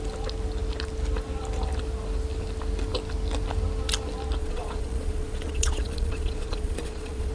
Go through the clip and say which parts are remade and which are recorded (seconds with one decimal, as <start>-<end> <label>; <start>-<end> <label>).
0.0-4.4 recorded; 4.4-7.3 remade

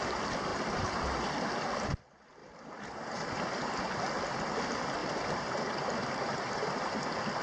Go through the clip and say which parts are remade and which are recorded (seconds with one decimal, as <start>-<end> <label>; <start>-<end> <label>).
0.0-0.5 recorded; 0.5-1.3 remade; 1.3-2.4 recorded; 2.4-3.0 remade; 3.0-5.0 recorded; 5.0-6.7 remade; 6.7-7.4 recorded

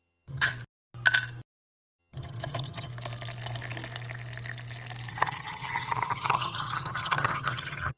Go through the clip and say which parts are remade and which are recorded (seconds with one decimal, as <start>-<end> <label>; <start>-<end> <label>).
0.0-0.5 remade; 0.5-2.0 recorded; 2.0-2.9 remade; 2.9-5.1 recorded; 5.1-8.0 remade